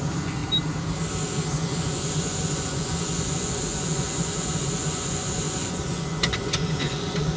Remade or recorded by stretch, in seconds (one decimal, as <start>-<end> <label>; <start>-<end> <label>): 0.0-0.4 remade; 0.4-1.5 recorded; 1.5-7.4 remade